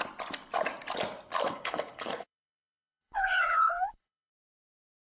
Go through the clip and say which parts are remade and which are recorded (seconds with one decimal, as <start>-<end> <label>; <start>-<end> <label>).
0.0-1.4 recorded; 1.4-4.3 remade; 4.3-5.1 recorded